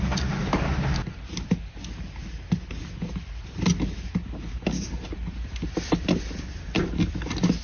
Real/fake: real